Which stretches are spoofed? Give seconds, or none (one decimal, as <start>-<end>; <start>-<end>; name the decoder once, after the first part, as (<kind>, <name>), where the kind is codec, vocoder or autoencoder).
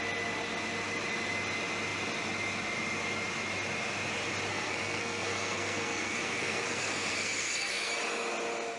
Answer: 4.5-7.9 (codec, SNAC)